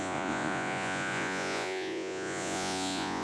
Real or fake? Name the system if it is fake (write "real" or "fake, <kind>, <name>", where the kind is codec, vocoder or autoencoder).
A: fake, vocoder, Vocos